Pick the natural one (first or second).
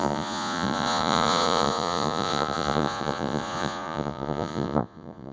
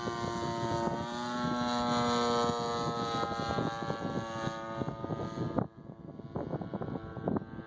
second